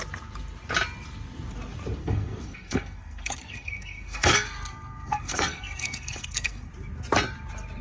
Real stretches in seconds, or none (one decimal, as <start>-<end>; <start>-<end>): 0.0-2.0; 6.7-7.8